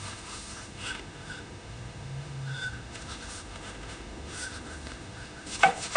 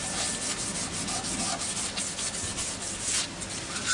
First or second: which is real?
second